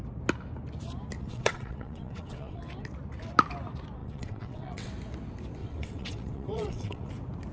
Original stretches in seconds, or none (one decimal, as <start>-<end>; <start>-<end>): 0.0-1.2; 2.6-4.0; 4.9-5.6; 7.1-7.5